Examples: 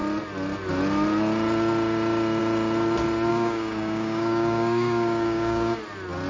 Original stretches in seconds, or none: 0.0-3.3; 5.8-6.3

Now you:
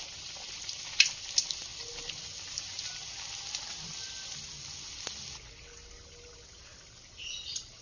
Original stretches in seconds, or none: 0.0-7.8

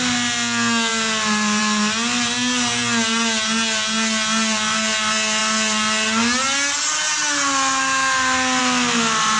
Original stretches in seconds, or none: 0.0-9.4

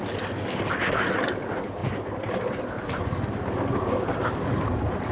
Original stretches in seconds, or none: 0.0-5.1

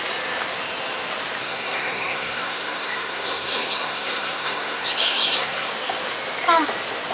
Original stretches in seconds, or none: 0.0-1.4; 5.7-7.1

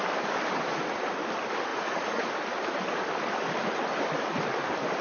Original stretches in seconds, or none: 0.0-0.7; 1.2-1.7; 2.3-5.0